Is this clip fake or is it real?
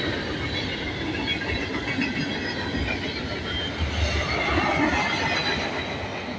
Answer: real